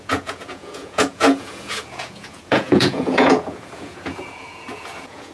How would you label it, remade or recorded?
remade